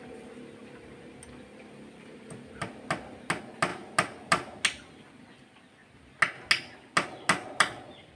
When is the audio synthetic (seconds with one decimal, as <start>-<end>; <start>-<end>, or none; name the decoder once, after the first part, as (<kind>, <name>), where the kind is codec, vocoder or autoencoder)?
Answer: none